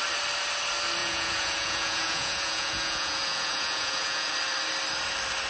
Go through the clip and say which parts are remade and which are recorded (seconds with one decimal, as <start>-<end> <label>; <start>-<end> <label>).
0.0-1.0 recorded; 1.0-4.3 remade; 4.3-5.5 recorded